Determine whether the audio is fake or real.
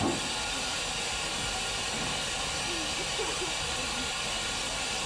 fake